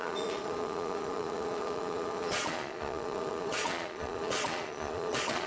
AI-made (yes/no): yes